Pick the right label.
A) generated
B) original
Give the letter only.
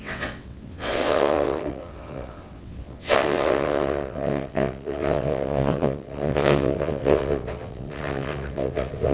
A